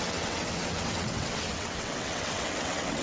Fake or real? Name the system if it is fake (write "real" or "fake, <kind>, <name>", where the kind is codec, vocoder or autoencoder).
fake, vocoder, WaveNeXt